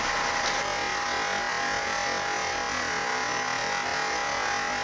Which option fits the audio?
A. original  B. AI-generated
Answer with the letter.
A